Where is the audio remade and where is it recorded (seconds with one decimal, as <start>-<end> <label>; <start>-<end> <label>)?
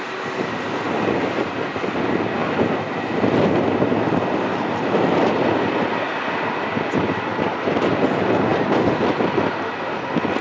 0.0-10.4 recorded